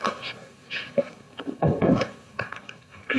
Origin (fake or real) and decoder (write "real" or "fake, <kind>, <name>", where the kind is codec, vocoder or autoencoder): fake, codec, SNAC